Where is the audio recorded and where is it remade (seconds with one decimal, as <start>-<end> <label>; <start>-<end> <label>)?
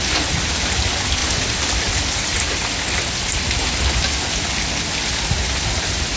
0.0-6.2 recorded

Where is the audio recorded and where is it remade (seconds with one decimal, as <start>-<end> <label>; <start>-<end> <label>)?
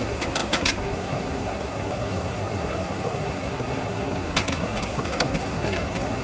0.0-6.2 remade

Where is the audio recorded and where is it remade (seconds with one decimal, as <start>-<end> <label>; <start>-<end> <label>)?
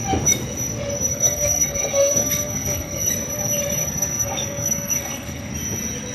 0.0-1.1 recorded; 1.1-3.1 remade; 3.1-3.8 recorded; 3.8-5.5 remade; 5.5-6.1 recorded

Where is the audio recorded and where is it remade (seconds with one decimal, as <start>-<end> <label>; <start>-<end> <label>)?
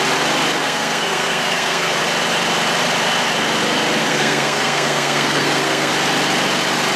0.0-0.6 recorded; 0.6-2.0 remade; 2.0-4.0 recorded; 4.0-5.9 remade; 5.9-7.0 recorded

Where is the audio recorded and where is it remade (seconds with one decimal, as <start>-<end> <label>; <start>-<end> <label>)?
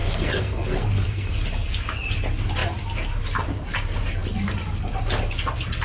0.0-1.3 remade; 1.3-5.8 recorded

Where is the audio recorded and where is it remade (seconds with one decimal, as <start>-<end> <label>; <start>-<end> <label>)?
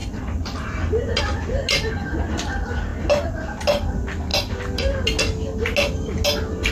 0.0-6.7 recorded